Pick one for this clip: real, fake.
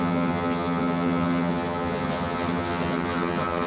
fake